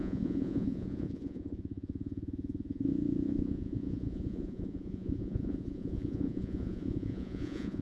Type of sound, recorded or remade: remade